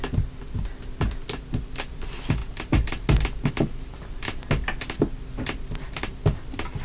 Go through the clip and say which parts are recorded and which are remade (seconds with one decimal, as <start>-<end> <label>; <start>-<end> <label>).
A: 0.0-6.8 recorded

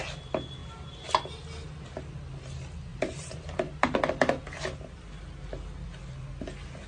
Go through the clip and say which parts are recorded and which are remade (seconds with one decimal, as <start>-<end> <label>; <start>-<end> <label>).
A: 0.0-2.9 recorded; 2.9-4.4 remade; 4.4-6.9 recorded

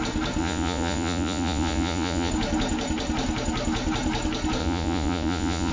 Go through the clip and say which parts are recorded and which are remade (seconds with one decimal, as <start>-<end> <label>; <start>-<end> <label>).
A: 0.0-0.4 recorded; 0.4-2.3 remade; 2.3-4.6 recorded; 4.6-5.7 remade

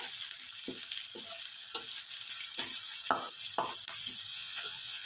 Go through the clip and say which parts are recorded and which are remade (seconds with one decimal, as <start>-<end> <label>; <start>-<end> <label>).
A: 0.0-4.3 recorded; 4.3-5.1 remade

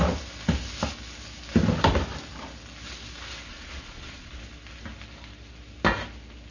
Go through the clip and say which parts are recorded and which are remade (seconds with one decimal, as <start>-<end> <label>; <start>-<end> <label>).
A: 0.0-3.5 recorded; 3.5-4.3 remade; 4.3-6.5 recorded

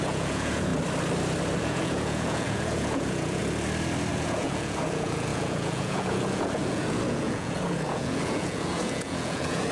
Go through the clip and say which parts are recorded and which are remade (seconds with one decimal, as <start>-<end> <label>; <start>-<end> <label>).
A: 0.0-0.7 remade; 0.7-1.6 recorded; 1.6-3.4 remade; 3.4-4.1 recorded; 4.1-9.7 remade

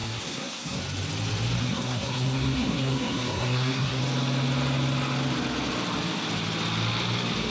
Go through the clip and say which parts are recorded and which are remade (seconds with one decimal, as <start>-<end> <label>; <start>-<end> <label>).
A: 0.0-0.8 remade; 0.8-1.6 recorded; 1.6-4.0 remade; 4.0-7.5 recorded

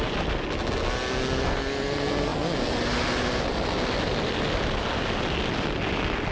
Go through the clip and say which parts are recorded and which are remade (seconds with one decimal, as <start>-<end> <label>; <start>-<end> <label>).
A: 0.0-6.3 recorded